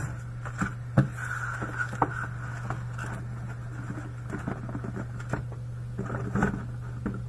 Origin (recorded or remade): recorded